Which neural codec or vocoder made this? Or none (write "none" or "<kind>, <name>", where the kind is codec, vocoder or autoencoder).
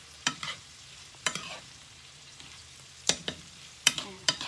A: vocoder, BigVGAN v2